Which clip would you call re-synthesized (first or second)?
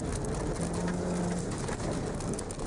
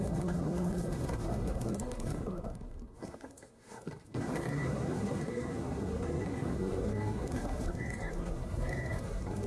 second